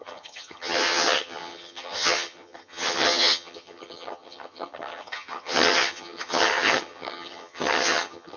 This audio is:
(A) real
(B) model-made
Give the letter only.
B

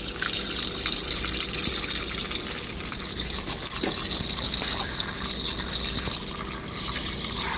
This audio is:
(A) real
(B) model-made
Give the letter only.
A